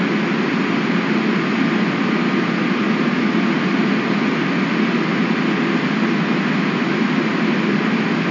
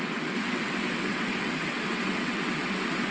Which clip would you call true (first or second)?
first